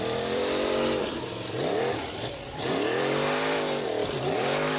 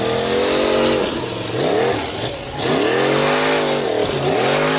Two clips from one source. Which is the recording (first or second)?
second